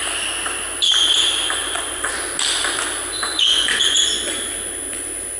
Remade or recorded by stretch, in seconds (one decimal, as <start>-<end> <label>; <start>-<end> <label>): 0.0-1.6 recorded; 1.6-2.2 remade; 2.2-3.3 recorded; 3.3-4.2 remade; 4.2-5.4 recorded